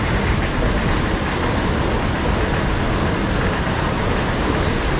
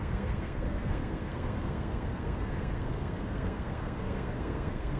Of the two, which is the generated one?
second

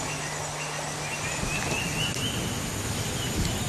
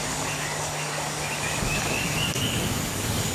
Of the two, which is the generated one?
second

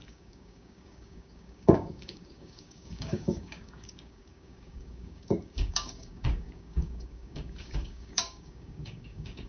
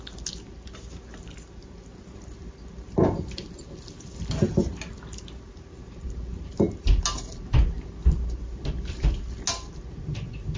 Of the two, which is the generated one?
first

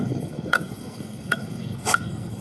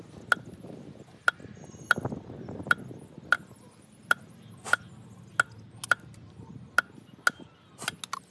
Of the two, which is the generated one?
first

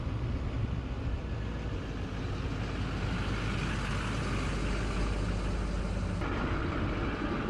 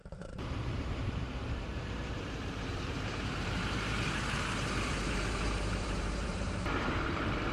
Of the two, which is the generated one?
second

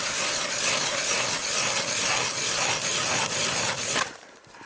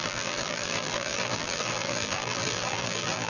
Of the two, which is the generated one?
second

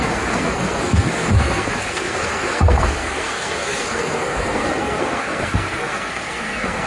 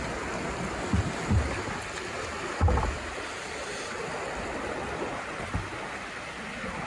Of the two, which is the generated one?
first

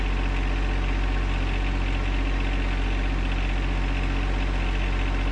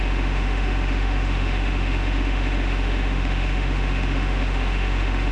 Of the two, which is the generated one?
second